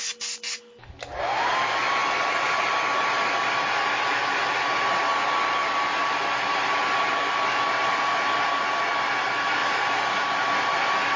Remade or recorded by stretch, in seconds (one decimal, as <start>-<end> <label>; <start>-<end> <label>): 0.0-2.0 recorded; 2.0-2.6 remade; 2.6-9.6 recorded; 9.6-10.7 remade; 10.7-11.2 recorded